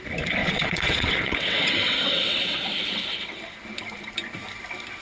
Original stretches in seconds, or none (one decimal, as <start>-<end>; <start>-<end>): 0.0-0.4; 3.4-5.0